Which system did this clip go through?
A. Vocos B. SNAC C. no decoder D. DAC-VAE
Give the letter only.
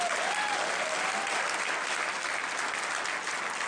C